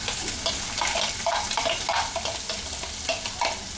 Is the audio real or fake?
real